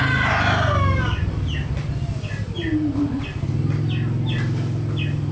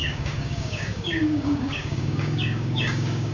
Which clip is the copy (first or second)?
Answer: second